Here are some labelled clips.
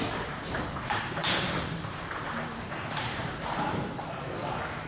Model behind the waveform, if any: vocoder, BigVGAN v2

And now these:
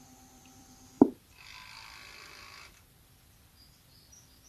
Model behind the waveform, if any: vocoder, BigVGAN v2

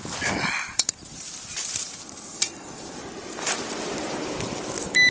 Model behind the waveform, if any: vocoder, BigVGAN v2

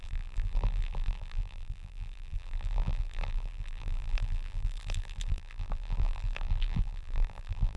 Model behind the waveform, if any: vocoder, BigVGAN v2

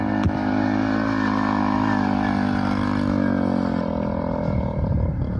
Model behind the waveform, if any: none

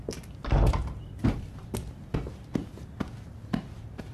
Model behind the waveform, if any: none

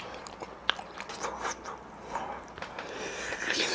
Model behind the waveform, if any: none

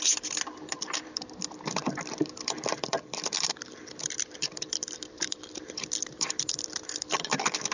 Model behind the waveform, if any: vocoder, BigVGAN v2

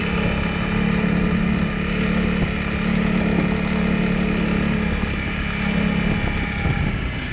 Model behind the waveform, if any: none